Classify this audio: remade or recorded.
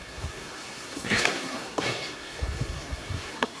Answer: remade